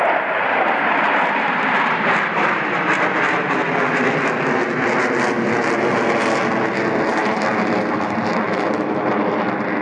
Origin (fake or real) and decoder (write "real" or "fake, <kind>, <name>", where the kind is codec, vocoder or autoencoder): real